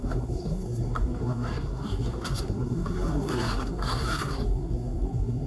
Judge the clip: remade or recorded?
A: remade